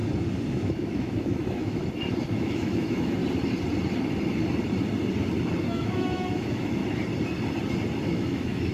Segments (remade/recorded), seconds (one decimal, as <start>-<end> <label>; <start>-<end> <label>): 0.0-0.5 recorded; 0.5-1.8 remade; 1.8-2.3 recorded; 2.3-3.2 remade; 3.2-5.6 recorded; 5.6-6.8 remade; 6.8-8.0 recorded; 8.0-8.7 remade